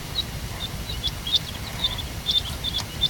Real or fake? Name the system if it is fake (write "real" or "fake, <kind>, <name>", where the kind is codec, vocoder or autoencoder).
fake, vocoder, BigVGAN v2